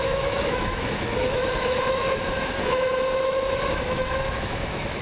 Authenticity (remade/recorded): remade